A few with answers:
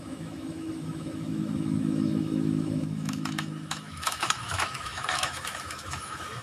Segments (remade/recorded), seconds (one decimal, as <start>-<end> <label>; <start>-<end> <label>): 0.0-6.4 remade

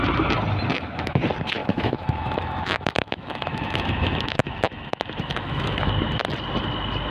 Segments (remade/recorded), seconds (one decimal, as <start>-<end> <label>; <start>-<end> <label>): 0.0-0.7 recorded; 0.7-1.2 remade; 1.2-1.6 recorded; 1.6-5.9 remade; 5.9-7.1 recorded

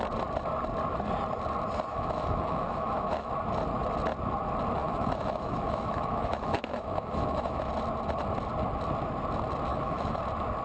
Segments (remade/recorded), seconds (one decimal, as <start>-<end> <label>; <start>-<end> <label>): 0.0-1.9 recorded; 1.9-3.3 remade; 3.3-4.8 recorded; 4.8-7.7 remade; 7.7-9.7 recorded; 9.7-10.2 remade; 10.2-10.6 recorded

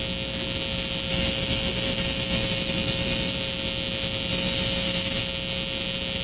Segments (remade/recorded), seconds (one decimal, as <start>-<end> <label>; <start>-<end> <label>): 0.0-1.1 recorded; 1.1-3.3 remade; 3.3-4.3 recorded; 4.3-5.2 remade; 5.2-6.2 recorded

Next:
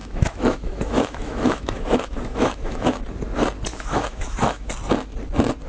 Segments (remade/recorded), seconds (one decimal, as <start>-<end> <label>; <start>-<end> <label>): 0.0-3.0 remade; 3.0-3.7 recorded; 3.7-4.7 remade; 4.7-5.7 recorded

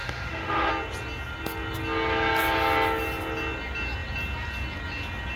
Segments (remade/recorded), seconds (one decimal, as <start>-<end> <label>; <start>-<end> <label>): 0.0-0.7 remade; 0.7-5.4 recorded